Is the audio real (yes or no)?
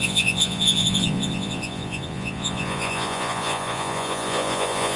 no